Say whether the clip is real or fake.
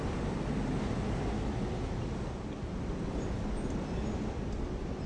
real